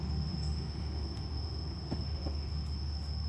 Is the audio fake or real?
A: fake